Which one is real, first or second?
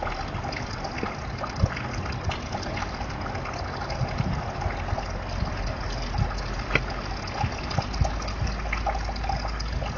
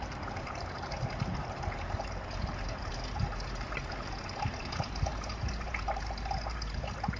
first